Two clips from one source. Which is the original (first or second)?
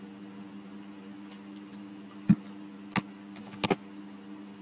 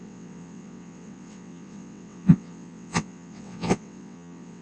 first